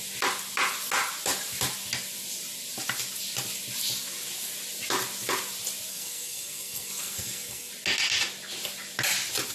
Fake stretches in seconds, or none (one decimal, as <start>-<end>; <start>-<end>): 5.9-7.7

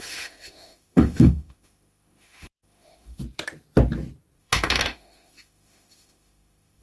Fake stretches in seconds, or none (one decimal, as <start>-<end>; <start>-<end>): 0.0-3.2; 4.4-6.8

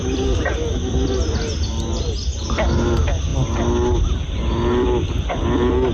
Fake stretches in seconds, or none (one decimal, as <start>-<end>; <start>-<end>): none

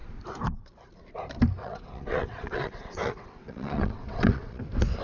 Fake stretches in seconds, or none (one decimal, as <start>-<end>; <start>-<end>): 1.6-4.6

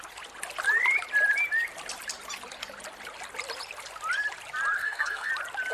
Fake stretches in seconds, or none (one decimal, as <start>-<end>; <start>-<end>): 4.8-5.3

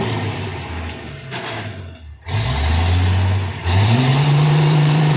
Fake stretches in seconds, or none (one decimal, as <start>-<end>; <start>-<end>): 0.0-0.5; 3.6-5.2